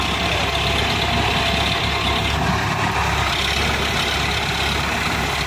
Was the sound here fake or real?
real